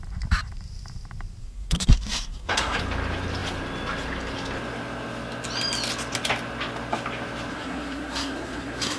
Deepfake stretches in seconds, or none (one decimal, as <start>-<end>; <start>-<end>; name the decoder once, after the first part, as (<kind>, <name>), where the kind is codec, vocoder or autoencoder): 1.4-2.8 (codec, SNAC); 7.5-9.0